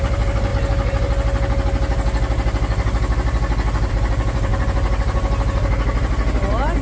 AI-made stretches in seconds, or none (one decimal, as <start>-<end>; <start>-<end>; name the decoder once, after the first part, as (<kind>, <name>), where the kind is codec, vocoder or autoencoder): 0.0-0.5 (vocoder, BigVGAN v2); 3.9-4.5